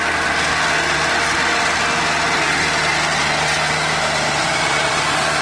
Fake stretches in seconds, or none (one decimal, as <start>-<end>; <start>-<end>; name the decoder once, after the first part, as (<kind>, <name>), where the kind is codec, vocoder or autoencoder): 4.4-5.4 (vocoder, Vocos)